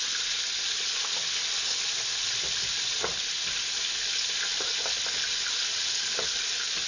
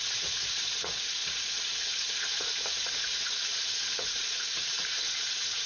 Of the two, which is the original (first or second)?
first